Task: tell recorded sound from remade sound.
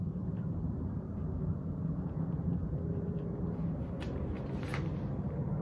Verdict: remade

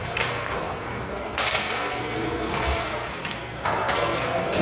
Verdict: remade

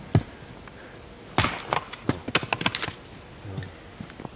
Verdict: recorded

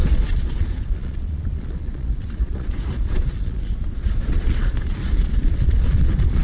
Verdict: remade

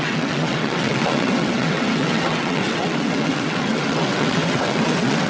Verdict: remade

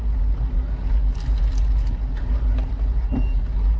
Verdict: recorded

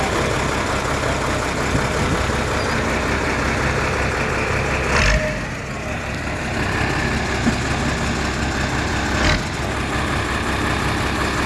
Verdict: recorded